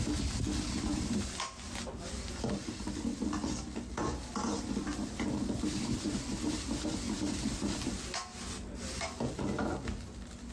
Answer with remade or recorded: recorded